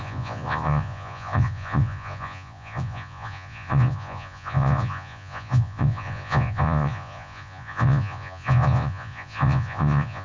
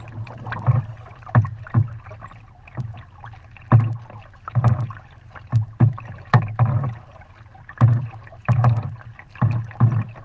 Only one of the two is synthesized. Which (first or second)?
first